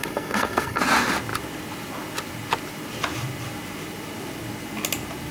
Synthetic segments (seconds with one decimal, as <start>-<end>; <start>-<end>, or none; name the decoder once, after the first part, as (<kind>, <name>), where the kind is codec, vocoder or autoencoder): 0.0-0.8 (codec, SNAC)